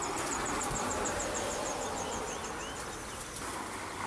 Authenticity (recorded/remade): remade